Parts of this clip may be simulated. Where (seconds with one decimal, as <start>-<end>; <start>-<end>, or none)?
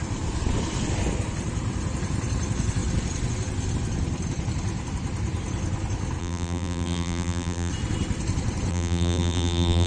6.2-7.7; 8.7-9.9